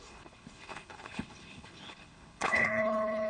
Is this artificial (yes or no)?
yes